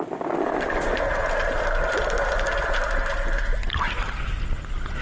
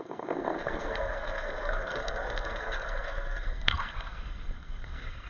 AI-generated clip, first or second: second